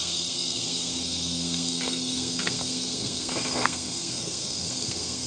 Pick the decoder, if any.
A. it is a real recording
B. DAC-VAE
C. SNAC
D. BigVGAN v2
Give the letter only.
C